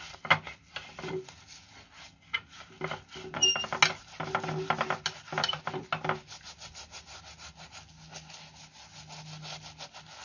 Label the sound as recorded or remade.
recorded